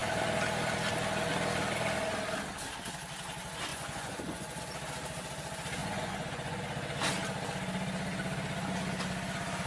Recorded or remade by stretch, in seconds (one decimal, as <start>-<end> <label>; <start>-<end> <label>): 0.0-3.7 recorded; 3.7-4.6 remade; 4.6-5.8 recorded; 5.8-6.6 remade; 6.6-9.7 recorded